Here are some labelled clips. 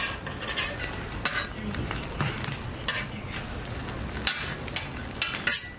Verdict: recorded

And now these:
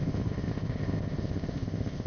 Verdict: remade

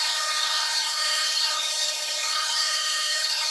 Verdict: remade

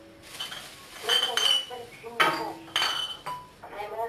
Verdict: recorded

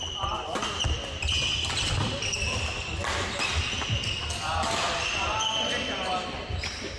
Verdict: recorded